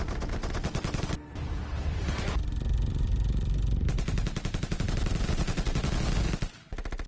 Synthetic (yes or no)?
no